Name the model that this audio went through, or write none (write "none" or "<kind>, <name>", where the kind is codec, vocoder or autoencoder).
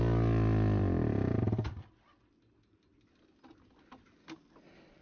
vocoder, BigVGAN v2